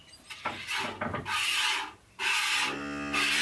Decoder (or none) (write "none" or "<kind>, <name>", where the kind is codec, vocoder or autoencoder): none